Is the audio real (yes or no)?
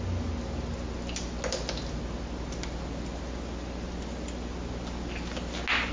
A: yes